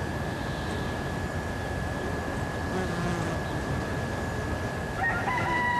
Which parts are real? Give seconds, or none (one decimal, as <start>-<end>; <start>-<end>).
0.4-3.5; 3.9-4.8